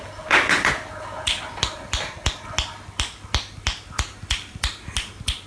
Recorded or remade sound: recorded